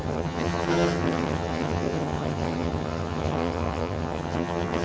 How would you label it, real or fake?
fake